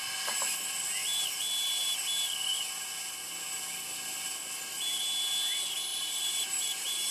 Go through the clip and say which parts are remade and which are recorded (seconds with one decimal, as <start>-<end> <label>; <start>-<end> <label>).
0.0-5.9 recorded; 5.9-7.1 remade